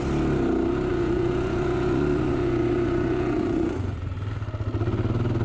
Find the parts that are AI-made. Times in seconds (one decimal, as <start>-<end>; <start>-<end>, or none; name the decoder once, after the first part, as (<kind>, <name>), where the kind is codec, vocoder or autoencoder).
0.9-4.1 (vocoder, Vocos)